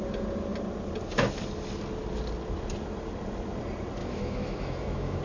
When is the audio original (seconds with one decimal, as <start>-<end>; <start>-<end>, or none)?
0.0-4.0